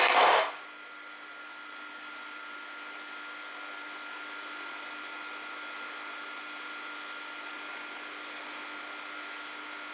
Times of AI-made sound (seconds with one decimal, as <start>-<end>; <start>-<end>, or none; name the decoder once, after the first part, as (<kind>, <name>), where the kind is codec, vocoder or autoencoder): none